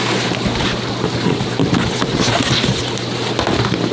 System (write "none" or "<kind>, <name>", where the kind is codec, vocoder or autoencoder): none